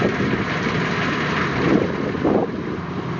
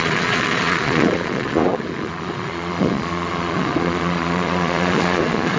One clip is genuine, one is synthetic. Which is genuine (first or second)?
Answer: first